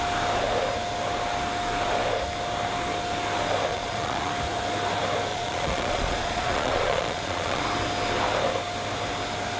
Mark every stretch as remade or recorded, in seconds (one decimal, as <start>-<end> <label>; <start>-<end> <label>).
0.0-3.7 recorded; 3.7-4.3 remade; 4.3-5.3 recorded; 5.3-7.6 remade; 7.6-9.6 recorded